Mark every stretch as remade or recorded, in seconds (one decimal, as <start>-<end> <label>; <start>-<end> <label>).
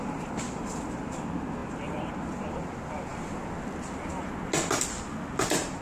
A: 0.0-5.8 recorded